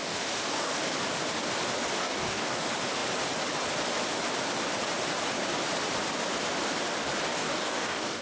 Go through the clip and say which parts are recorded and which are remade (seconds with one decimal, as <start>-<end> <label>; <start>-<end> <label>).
0.0-0.8 remade; 0.8-2.0 recorded; 2.0-2.6 remade; 2.6-7.3 recorded; 7.3-8.2 remade